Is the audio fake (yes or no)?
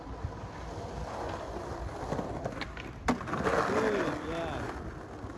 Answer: no